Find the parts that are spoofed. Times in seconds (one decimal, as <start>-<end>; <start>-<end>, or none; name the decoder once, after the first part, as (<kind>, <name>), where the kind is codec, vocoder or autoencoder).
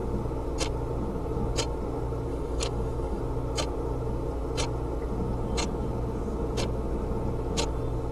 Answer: 2.3-3.2 (codec, DAC)